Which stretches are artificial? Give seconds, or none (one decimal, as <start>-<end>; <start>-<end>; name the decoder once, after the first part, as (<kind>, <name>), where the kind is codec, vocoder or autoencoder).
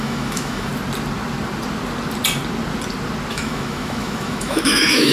0.0-0.7 (autoencoder, DAC-VAE); 3.3-5.1